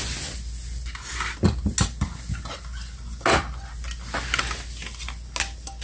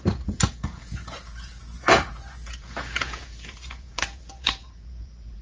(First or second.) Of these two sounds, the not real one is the second